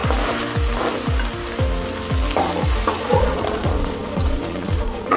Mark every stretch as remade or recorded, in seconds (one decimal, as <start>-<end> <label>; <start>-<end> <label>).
0.0-3.0 recorded; 3.0-5.2 remade